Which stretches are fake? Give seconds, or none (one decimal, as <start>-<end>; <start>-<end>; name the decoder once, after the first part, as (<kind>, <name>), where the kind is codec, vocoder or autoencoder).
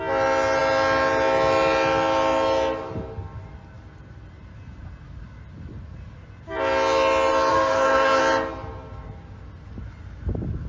7.5-8.2 (codec, SNAC)